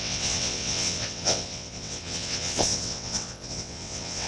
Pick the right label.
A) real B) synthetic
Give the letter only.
B